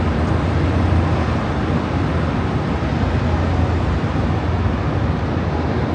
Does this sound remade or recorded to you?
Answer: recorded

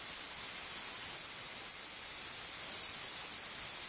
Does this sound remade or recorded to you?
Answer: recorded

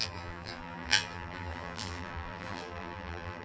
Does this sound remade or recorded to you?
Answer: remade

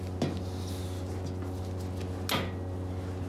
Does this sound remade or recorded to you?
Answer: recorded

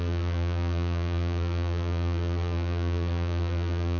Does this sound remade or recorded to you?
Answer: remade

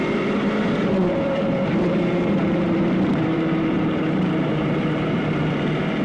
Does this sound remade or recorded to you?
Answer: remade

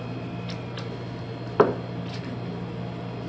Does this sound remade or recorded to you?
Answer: recorded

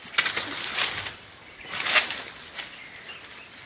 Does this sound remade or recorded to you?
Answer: remade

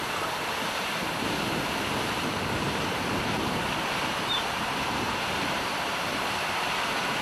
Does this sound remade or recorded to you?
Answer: remade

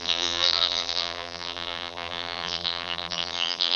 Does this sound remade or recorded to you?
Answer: remade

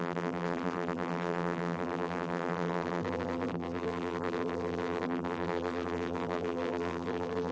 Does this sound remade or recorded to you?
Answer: remade